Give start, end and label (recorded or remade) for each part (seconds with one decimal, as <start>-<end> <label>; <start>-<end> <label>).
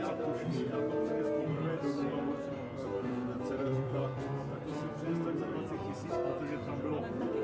0.0-7.4 remade